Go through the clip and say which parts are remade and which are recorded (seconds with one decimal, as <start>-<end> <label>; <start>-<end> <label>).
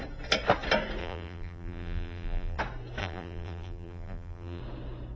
0.0-1.0 recorded; 1.0-2.6 remade; 2.6-3.0 recorded; 3.0-4.6 remade; 4.6-5.2 recorded